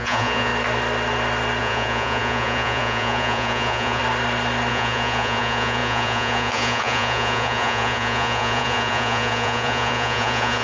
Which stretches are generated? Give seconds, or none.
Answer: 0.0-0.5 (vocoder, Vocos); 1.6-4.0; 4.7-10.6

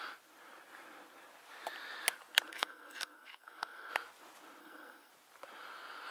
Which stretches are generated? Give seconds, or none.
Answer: 2.5-3.9 (codec, SNAC); 4.6-5.1

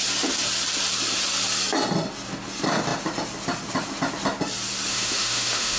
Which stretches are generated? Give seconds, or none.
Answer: 4.9-5.8 (autoencoder, DAC-VAE)

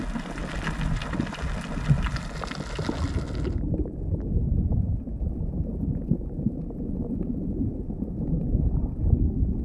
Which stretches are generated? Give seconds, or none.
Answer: none

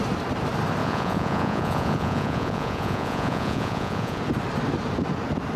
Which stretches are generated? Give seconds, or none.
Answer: 0.8-4.2 (vocoder, Vocos)

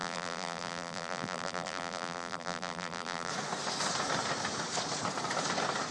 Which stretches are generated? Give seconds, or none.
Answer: 0.0-3.3 (vocoder, BigVGAN v2)